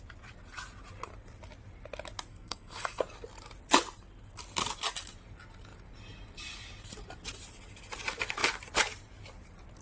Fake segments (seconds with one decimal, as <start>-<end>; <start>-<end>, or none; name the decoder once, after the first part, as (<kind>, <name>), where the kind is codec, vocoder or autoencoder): 2.3-3.0 (codec, SNAC)